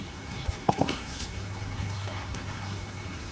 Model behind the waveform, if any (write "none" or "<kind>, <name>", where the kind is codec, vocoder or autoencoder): codec, SNAC